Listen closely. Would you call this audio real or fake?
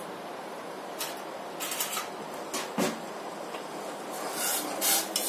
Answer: real